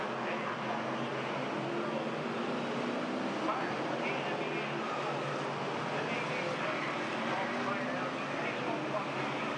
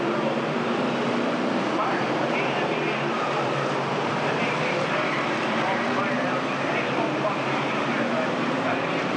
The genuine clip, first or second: first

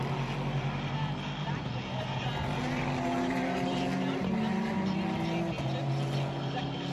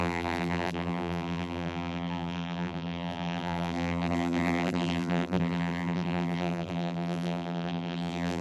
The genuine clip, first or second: first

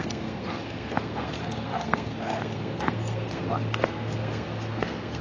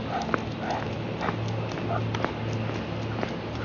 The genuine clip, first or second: second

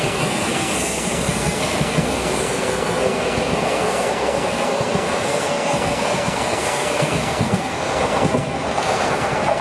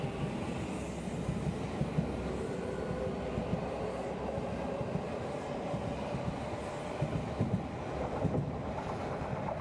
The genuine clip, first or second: second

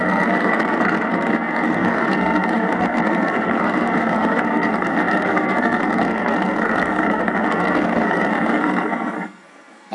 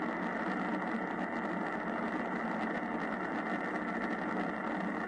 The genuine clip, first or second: second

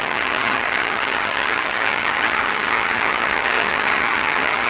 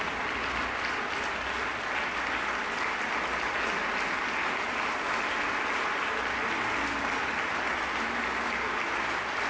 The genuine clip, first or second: second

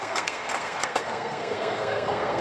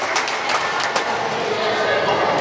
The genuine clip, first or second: second